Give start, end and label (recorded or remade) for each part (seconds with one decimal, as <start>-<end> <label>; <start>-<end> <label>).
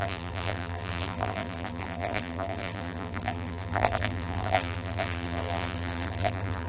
0.0-6.7 remade